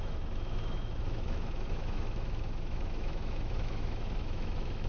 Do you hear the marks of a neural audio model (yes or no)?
yes